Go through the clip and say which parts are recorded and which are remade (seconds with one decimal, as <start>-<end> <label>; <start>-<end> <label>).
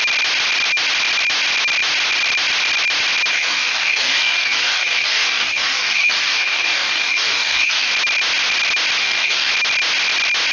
0.0-3.3 recorded; 3.3-7.9 remade; 7.9-9.0 recorded; 9.0-9.5 remade; 9.5-10.5 recorded